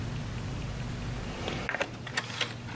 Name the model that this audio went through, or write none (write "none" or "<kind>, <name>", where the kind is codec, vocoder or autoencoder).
none